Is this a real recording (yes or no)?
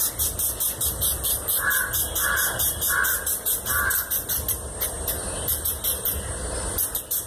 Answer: yes